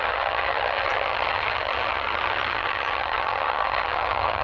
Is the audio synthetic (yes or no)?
yes